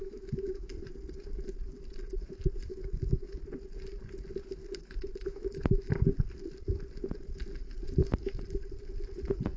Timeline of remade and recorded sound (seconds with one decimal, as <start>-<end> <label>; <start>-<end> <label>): 0.0-0.7 remade; 0.7-2.7 recorded; 2.7-3.4 remade; 3.4-4.6 recorded; 4.6-5.9 remade; 5.9-9.6 recorded